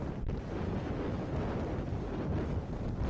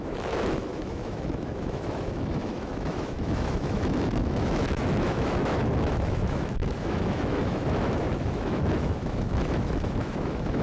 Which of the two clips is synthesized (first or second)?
second